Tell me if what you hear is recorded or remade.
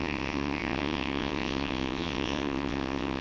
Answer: remade